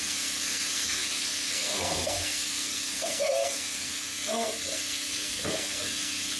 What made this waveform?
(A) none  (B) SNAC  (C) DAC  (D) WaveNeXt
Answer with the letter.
B